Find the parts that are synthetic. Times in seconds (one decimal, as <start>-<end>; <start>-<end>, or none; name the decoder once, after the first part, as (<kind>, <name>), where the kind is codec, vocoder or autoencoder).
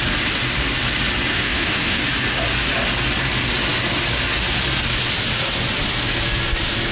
1.3-2.0 (autoencoder, DAC-VAE)